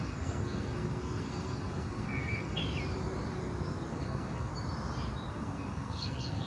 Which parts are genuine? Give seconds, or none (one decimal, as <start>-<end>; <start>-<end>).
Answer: 2.6-3.9; 4.5-5.3